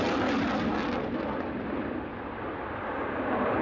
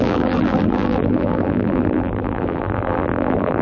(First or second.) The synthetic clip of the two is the second